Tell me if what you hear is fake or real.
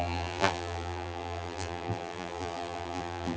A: fake